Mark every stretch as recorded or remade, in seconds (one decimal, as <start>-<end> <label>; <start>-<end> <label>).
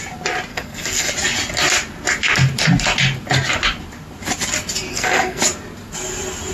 0.0-0.5 recorded; 0.5-1.1 remade; 1.1-4.9 recorded; 4.9-5.4 remade; 5.4-6.5 recorded